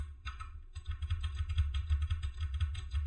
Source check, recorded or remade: remade